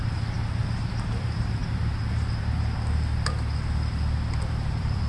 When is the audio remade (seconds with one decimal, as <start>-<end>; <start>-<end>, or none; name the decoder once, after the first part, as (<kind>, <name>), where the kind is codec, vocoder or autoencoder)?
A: 0.0-0.6 (vocoder, BigVGAN v2); 1.2-1.6; 4.4-5.1